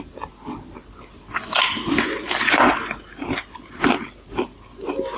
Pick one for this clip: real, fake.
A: real